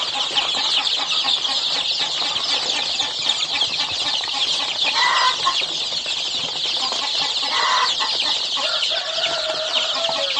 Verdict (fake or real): real